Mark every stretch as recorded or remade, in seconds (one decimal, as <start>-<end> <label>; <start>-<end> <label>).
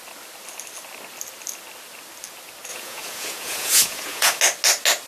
0.0-2.7 recorded; 2.7-4.4 remade; 4.4-5.1 recorded